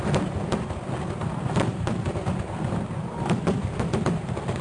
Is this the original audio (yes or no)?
no